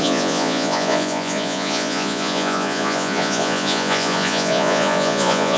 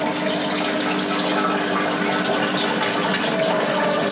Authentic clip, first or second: second